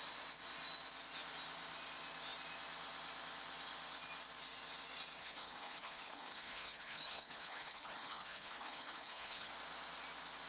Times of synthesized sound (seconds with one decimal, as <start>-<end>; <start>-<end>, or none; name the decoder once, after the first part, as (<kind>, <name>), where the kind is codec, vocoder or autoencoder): 5.2-9.5 (codec, HILCodec)